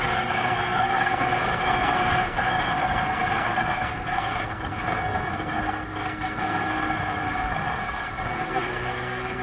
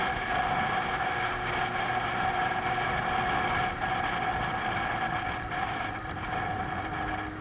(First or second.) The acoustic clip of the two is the second